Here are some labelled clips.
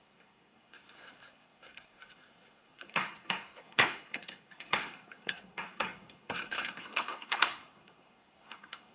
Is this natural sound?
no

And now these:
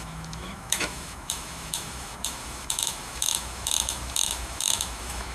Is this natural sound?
no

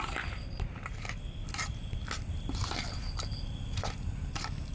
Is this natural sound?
yes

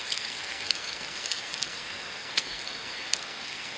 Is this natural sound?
no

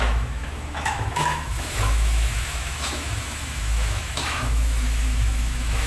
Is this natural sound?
no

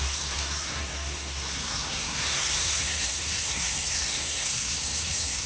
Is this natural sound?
no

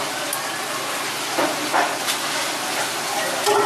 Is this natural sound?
yes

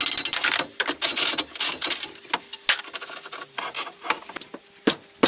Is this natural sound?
yes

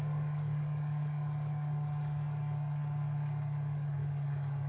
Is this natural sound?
no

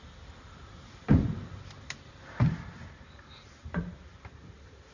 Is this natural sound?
no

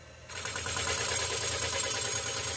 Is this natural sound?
yes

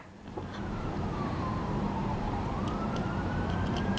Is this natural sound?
no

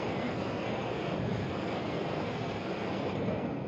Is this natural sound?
no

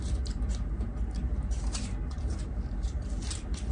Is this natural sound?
no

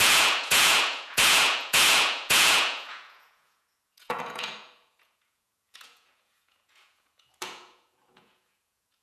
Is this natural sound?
no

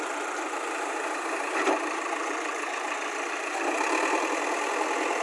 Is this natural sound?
yes